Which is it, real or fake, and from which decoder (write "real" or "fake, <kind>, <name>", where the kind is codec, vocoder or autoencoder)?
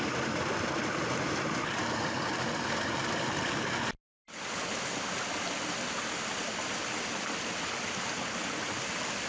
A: real